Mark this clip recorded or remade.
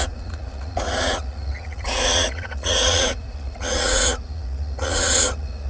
remade